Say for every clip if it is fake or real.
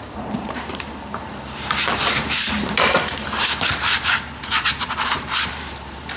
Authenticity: fake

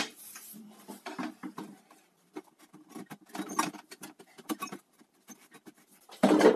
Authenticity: fake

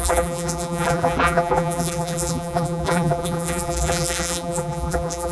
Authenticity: fake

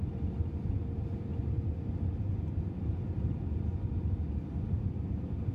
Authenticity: real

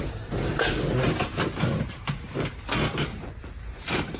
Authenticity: fake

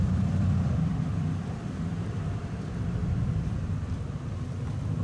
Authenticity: fake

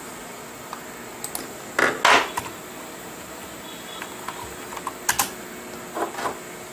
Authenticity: real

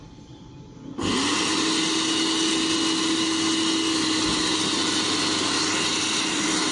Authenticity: real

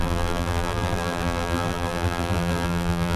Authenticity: fake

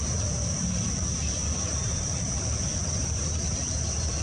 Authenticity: real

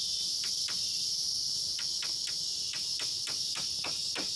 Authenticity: fake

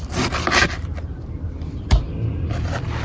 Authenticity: fake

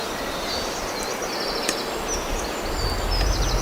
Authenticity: real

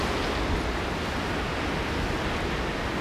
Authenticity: real